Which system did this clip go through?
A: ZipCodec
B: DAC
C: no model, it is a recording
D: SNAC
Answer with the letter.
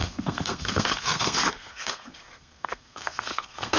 D